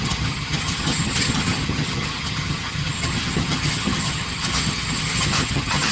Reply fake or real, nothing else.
fake